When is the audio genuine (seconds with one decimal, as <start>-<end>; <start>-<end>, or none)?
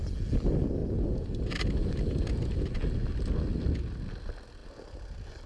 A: 0.0-5.5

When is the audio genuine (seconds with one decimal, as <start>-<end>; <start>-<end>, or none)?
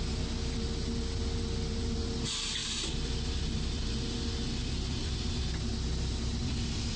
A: 0.0-2.6; 3.8-4.6; 5.3-7.0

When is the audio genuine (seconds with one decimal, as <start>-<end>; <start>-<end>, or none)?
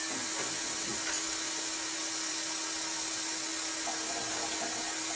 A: 0.0-5.2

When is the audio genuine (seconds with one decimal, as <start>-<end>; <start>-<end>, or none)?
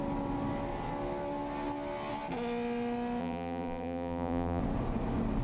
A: 0.0-3.2; 4.6-5.4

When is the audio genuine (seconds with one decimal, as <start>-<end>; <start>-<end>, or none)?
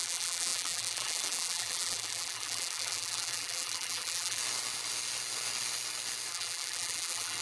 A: 4.4-6.3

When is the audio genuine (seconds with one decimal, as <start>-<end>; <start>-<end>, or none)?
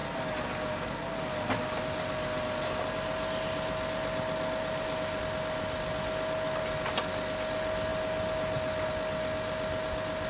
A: 0.0-10.3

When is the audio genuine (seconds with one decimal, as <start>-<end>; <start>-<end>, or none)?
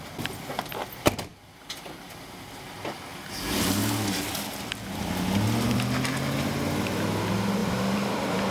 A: 0.0-7.6